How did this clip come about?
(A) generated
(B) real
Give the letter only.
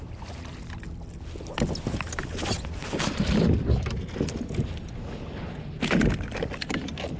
B